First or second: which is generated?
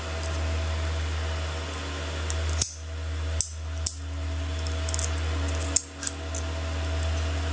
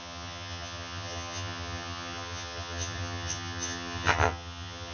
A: second